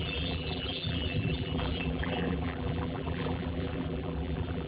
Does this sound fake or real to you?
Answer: fake